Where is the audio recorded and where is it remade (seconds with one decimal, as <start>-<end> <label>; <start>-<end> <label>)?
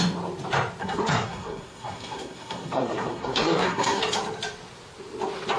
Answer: 0.0-0.8 recorded; 0.8-4.0 remade; 4.0-5.6 recorded